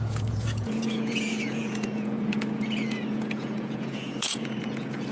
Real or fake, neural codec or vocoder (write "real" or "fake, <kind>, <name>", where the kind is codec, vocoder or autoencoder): fake, vocoder, Vocos